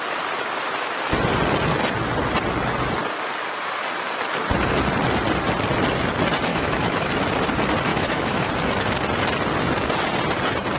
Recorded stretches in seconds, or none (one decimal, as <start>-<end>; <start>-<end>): 0.0-6.5; 7.1-7.9; 8.5-10.8